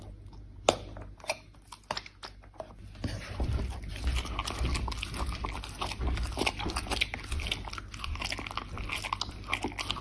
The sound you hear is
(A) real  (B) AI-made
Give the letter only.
A